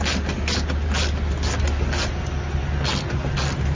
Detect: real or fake real